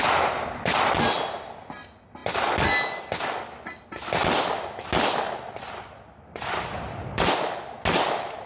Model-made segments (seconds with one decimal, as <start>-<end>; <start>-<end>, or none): none